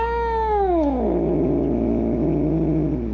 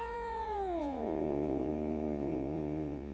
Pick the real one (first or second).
first